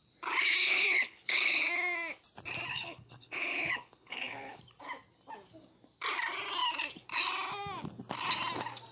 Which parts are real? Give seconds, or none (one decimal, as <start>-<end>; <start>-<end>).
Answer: 0.0-0.6; 1.6-2.7; 4.6-8.9